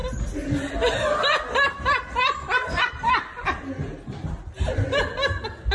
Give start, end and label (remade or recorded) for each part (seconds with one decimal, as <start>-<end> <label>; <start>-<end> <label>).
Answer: 0.0-5.7 recorded